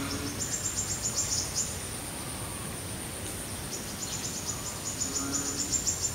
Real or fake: real